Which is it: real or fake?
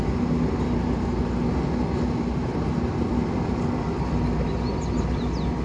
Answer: real